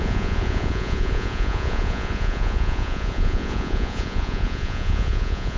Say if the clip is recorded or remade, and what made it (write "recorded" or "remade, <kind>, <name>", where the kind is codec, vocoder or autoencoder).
remade, vocoder, Vocos